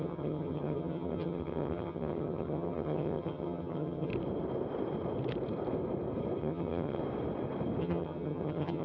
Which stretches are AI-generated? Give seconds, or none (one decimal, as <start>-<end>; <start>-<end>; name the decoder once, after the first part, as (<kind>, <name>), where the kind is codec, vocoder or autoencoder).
0.0-4.1 (vocoder, HiFi-GAN); 6.4-7.0; 7.8-8.8